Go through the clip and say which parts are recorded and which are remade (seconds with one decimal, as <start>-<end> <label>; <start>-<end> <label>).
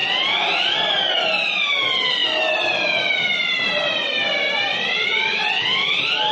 0.0-6.3 recorded